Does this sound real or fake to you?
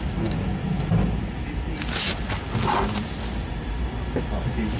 real